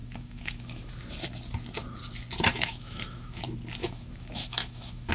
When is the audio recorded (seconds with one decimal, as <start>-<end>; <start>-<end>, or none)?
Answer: 0.9-2.5; 3.4-3.8